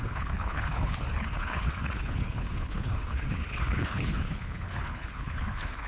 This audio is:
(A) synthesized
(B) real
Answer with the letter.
A